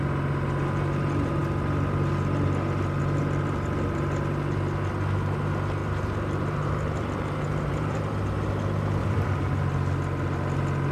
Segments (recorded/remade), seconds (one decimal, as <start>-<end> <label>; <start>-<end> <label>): 0.0-5.8 recorded; 5.8-8.1 remade; 8.1-9.0 recorded; 9.0-9.6 remade; 9.6-10.9 recorded